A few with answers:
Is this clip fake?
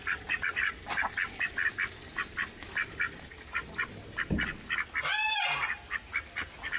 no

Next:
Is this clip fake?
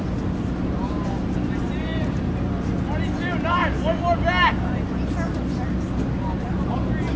no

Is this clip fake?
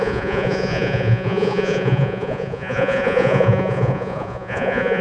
yes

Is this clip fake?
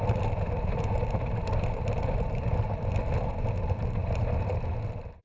no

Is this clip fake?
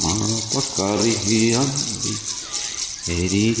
no